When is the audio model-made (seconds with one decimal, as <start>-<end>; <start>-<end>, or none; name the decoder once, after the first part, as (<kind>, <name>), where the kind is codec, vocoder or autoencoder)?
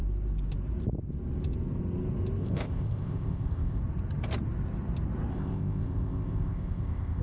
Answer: 2.4-3.8 (codec, ZipCodec); 5.3-7.2